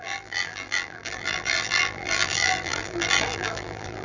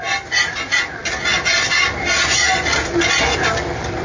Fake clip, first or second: first